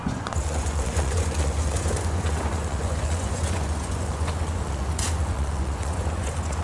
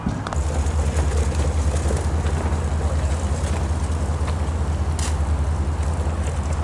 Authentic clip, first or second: second